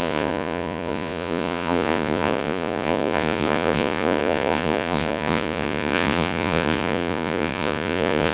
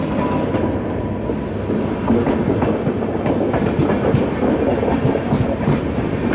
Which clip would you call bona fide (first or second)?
second